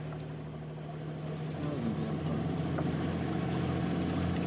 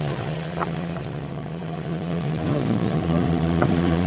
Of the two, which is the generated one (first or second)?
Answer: second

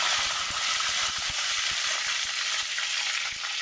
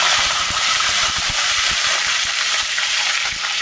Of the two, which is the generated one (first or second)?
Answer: second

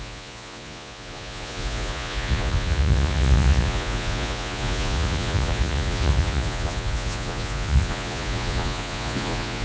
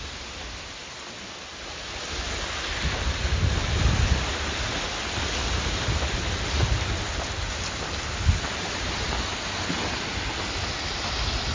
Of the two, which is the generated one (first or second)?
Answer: first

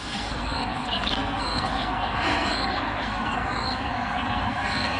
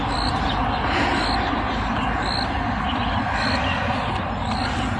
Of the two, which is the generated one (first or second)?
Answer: first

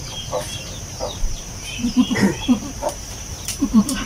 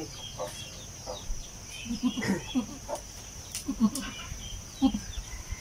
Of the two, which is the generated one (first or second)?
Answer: first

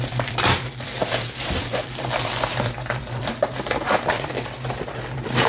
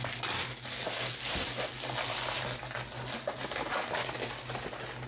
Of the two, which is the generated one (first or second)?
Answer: first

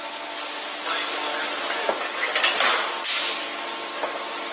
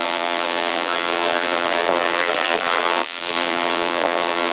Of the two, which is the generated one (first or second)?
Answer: second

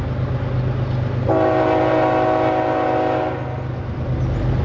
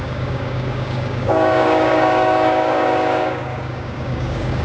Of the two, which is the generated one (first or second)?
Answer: second